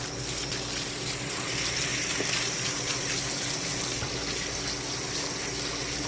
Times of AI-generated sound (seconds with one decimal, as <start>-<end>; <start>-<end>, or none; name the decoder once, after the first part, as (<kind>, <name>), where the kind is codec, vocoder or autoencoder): none